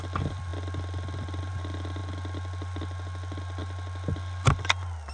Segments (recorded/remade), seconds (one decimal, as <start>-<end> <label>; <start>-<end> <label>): 0.0-5.1 recorded